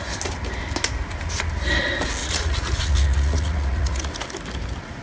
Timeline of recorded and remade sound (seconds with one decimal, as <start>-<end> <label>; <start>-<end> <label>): 0.0-2.2 recorded; 2.2-4.2 remade; 4.2-5.0 recorded